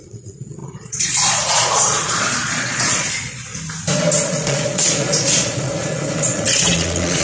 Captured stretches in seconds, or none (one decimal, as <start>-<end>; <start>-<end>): 3.5-4.3